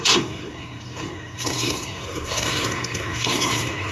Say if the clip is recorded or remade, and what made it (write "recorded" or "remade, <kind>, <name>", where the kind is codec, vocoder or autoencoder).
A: remade, codec, SNAC